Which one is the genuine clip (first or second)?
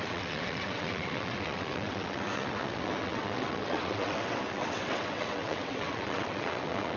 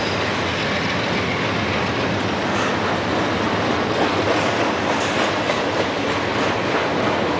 second